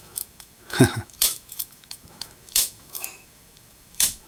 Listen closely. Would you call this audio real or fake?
fake